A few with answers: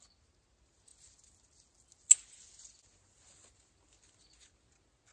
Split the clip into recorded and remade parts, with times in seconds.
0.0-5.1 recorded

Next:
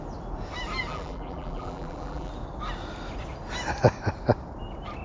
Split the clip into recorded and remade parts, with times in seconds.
0.0-0.9 recorded; 0.9-2.3 remade; 2.3-5.0 recorded

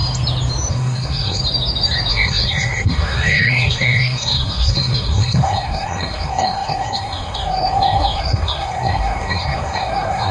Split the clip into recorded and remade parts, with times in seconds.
0.0-0.7 recorded; 0.7-1.4 remade; 1.4-2.1 recorded; 2.1-10.3 remade

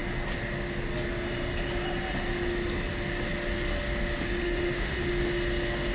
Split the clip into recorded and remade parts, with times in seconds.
0.0-4.4 recorded; 4.4-5.1 remade; 5.1-5.9 recorded

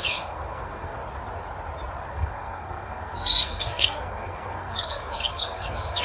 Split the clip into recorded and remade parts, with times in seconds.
0.0-1.0 remade; 1.0-2.1 recorded; 2.1-6.0 remade

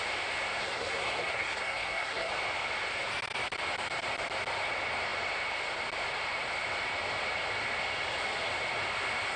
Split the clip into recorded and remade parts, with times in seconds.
0.0-0.6 recorded; 0.6-2.3 remade; 2.3-9.4 recorded

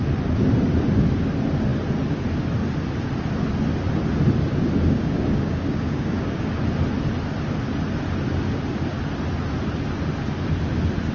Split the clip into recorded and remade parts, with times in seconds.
0.0-4.4 recorded; 4.4-6.6 remade; 6.6-11.1 recorded

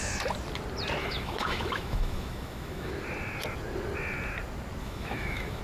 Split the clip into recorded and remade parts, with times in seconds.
0.0-1.0 recorded; 1.0-2.9 remade; 2.9-4.8 recorded; 4.8-5.6 remade